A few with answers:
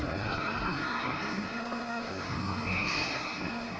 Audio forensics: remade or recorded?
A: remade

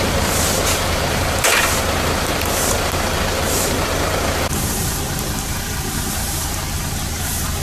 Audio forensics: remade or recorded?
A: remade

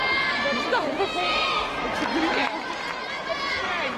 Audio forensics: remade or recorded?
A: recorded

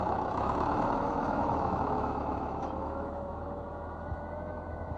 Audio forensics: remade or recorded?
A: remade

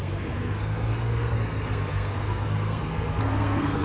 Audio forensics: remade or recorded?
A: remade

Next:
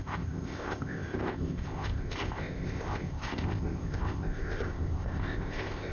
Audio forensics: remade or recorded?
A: remade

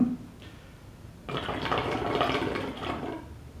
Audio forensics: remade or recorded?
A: recorded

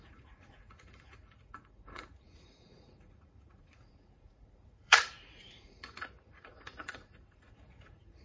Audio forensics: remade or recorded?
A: remade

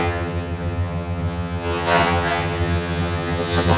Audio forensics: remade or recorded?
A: remade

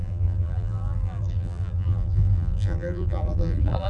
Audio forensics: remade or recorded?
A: remade